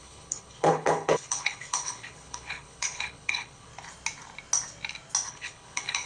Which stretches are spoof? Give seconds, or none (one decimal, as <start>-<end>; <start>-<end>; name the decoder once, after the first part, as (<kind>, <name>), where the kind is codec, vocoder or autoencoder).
0.0-3.7 (codec, HILCodec); 5.3-6.1